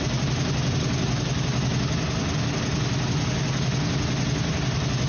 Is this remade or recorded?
recorded